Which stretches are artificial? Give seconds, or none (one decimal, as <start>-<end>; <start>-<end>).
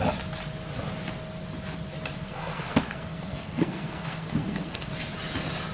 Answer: 2.2-4.9